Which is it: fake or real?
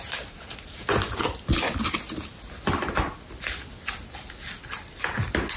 real